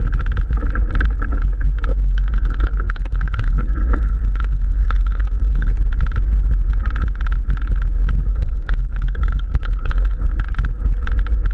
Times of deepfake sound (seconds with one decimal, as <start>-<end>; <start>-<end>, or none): 1.9-5.7; 8.3-10.2